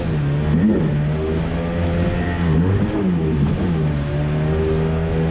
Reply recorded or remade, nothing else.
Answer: recorded